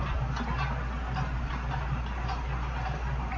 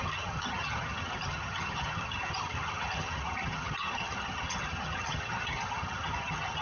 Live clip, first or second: first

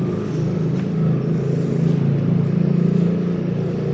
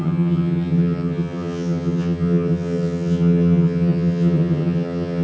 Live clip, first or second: first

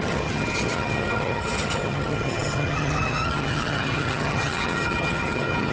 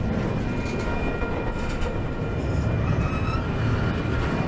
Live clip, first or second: second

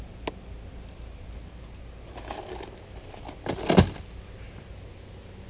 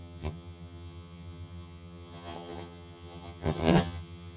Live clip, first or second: first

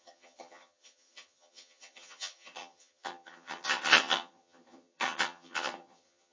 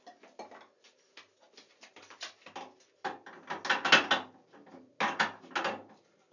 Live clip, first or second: second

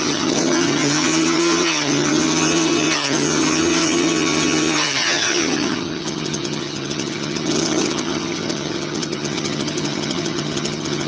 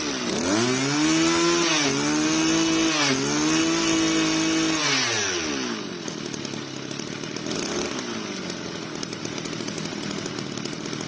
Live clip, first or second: second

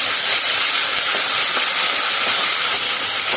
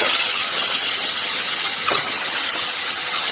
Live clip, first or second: first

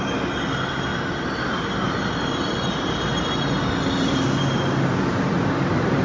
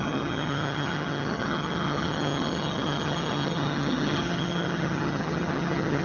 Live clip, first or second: first